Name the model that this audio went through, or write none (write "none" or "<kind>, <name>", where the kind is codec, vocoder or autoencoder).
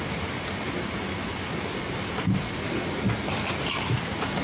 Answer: none